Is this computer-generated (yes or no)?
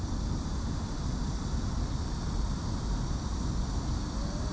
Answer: no